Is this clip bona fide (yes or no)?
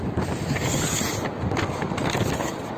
yes